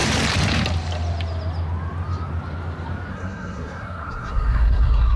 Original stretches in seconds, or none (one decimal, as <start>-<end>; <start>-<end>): 0.0-3.1